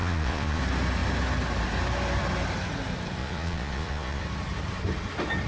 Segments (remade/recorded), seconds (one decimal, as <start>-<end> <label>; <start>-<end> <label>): 0.0-0.6 remade; 0.6-3.2 recorded; 3.2-4.2 remade; 4.2-5.5 recorded